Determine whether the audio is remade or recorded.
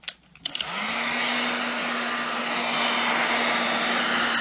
recorded